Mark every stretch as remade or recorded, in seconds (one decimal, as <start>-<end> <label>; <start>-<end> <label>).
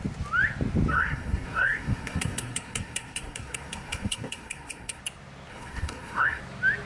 0.0-0.9 recorded; 0.9-5.0 remade; 5.0-5.5 recorded; 5.5-6.4 remade; 6.4-6.9 recorded